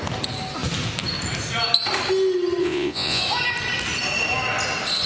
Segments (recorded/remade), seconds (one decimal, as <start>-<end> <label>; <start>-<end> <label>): 0.0-2.6 recorded; 2.6-3.2 remade; 3.2-5.1 recorded